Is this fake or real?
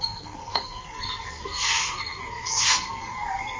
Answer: fake